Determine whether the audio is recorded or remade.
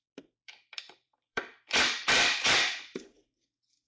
remade